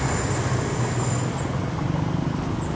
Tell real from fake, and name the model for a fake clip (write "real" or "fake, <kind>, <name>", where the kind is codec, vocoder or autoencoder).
real